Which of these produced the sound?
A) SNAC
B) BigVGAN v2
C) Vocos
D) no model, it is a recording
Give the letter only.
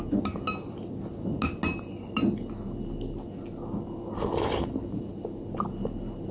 D